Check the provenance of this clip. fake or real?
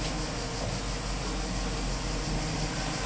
real